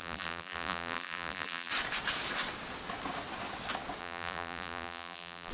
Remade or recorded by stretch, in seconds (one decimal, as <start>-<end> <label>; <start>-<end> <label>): 0.0-1.7 remade; 1.7-4.0 recorded; 4.0-5.5 remade